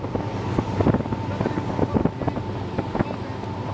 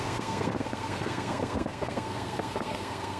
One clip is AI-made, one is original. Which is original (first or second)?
first